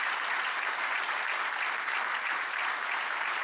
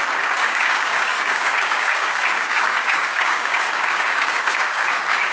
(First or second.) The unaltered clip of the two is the first